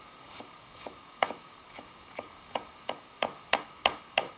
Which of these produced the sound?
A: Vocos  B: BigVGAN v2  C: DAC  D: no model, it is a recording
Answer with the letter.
C